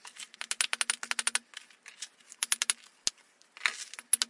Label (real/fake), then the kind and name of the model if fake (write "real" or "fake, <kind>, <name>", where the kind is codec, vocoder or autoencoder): real